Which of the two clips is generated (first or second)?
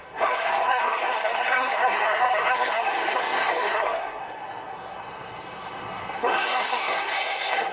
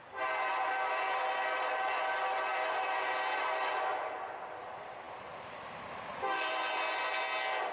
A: first